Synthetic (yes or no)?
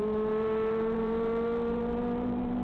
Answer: yes